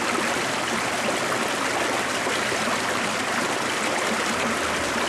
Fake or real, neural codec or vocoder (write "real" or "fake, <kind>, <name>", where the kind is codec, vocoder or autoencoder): real